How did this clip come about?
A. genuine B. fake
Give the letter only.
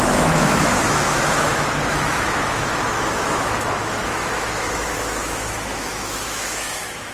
B